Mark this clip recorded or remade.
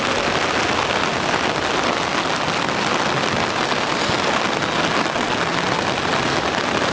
recorded